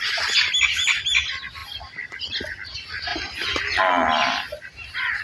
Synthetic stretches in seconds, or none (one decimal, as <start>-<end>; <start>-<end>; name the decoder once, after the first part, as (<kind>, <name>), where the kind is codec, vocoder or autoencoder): 3.1-3.8 (vocoder, BigVGAN v2)